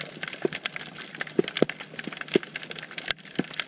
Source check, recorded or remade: recorded